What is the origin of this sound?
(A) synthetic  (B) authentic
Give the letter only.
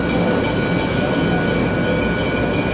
B